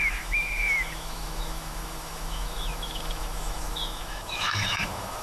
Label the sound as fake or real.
fake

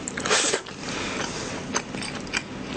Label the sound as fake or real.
real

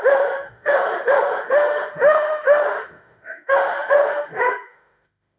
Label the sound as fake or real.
fake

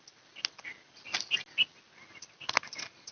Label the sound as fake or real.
real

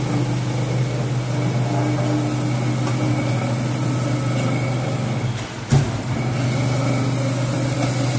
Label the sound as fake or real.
real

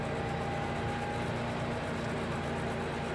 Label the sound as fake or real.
real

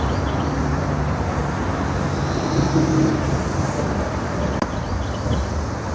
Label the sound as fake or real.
real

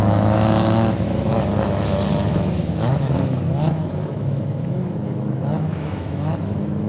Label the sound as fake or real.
fake